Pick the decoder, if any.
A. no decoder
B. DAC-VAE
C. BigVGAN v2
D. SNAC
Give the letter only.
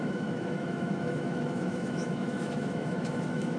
B